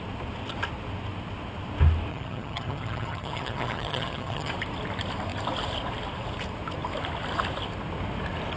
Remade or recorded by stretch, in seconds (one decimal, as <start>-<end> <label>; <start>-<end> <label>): 0.0-2.1 recorded; 2.1-4.5 remade; 4.5-8.6 recorded